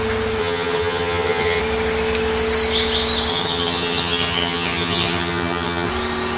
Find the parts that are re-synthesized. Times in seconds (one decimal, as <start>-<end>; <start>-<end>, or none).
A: 0.4-1.6; 3.3-5.9